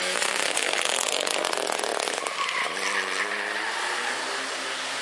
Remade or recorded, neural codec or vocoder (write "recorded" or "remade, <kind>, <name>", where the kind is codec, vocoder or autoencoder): recorded